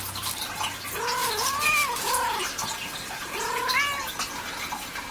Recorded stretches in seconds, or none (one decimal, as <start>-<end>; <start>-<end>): 0.0-5.1